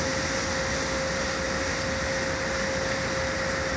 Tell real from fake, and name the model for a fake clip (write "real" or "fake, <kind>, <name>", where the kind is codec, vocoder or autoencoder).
real